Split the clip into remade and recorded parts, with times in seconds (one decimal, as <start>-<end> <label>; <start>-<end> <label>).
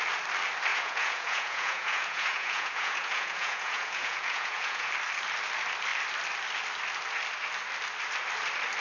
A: 0.0-0.7 recorded; 0.7-4.9 remade; 4.9-8.8 recorded